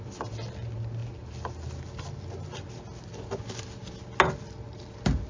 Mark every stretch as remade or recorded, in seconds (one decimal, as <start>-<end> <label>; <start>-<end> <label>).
0.0-5.3 recorded